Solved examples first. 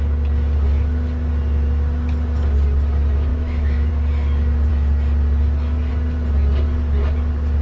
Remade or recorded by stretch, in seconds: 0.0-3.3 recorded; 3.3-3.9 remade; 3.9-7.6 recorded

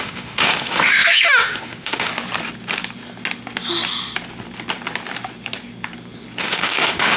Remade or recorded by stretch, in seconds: 0.0-2.1 remade; 2.1-6.4 recorded; 6.4-7.2 remade

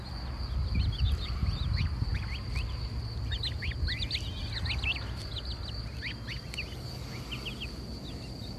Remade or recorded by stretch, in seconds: 0.0-8.6 recorded

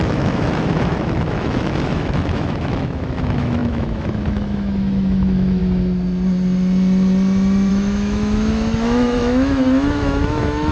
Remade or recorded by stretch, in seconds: 0.0-5.6 remade; 5.6-7.7 recorded; 7.7-10.7 remade

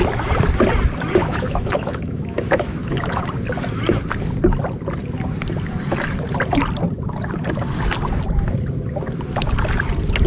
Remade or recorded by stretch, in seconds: 0.0-1.2 recorded; 1.2-3.2 remade; 3.2-10.3 recorded

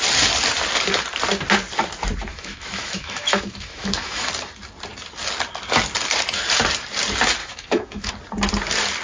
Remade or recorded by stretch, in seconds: 0.0-2.3 recorded; 2.3-4.3 remade; 4.3-7.4 recorded; 7.4-8.1 remade; 8.1-9.0 recorded